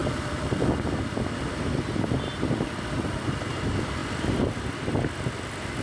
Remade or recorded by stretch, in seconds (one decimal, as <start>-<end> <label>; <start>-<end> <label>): 0.0-5.8 recorded